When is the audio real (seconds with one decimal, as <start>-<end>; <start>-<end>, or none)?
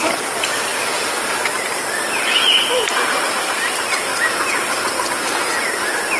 none